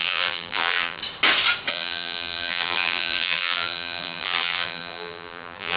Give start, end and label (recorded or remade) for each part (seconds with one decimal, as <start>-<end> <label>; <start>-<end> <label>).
0.0-1.0 remade; 1.0-1.7 recorded; 1.7-5.8 remade